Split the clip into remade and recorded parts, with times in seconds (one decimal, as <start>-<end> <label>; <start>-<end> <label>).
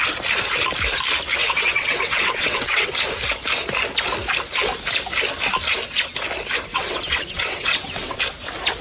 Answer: 0.0-1.4 recorded; 1.4-2.9 remade; 2.9-6.7 recorded; 6.7-8.2 remade; 8.2-8.8 recorded